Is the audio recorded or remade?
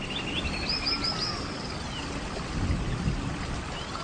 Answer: recorded